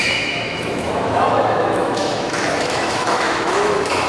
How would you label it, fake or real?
fake